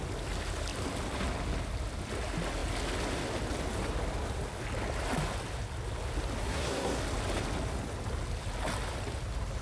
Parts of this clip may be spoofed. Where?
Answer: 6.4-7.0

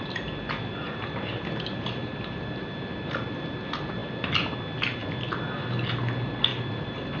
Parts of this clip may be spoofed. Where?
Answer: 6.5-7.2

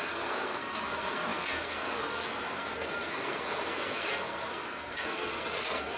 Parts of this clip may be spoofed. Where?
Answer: 0.0-6.0

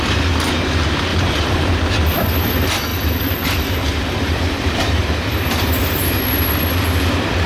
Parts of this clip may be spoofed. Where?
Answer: 1.1-1.7; 2.9-6.1

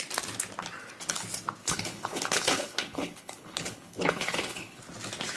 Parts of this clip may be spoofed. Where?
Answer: 1.6-4.8